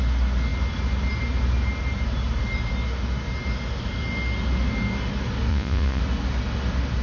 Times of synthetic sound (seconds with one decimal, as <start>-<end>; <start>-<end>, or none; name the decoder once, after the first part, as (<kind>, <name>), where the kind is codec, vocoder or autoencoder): 5.5-6.0 (vocoder, Vocos)